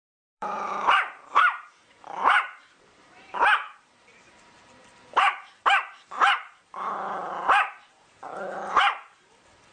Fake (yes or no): yes